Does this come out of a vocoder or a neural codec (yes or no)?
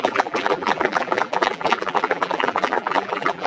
yes